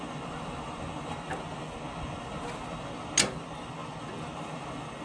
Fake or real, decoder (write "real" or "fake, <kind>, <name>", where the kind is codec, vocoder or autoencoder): real